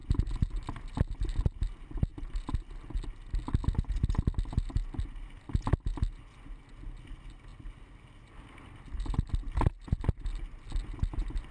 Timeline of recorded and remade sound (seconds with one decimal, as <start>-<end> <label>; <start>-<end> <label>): 0.0-11.5 recorded